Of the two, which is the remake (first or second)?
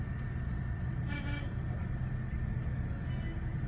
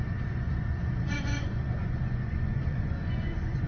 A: second